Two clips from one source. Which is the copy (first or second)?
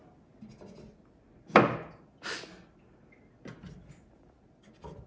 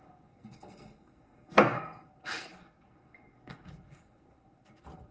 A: second